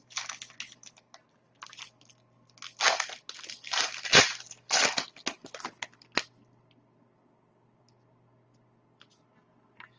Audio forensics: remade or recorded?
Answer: recorded